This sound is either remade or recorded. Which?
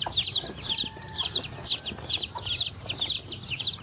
recorded